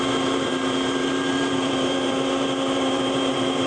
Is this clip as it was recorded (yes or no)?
no